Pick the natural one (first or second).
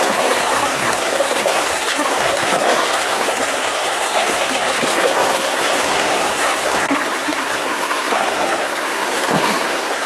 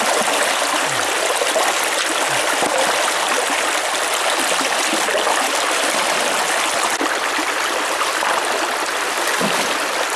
second